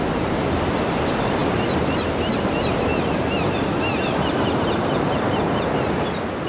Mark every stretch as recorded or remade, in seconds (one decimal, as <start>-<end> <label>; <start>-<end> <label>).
0.0-6.5 recorded